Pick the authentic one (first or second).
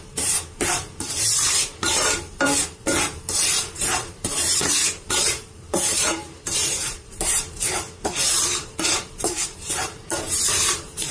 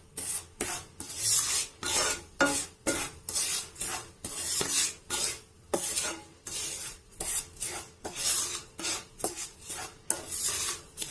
second